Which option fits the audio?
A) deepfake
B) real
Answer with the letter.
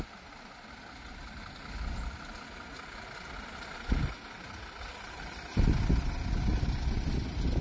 B